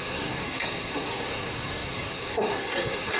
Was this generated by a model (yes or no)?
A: yes